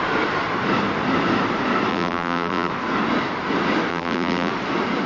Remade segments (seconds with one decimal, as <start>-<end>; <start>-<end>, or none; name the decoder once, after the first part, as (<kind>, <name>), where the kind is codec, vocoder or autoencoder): 1.9-2.7 (vocoder, BigVGAN v2); 3.9-4.5